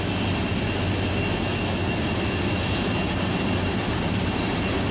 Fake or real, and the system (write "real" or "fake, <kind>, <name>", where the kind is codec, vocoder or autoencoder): real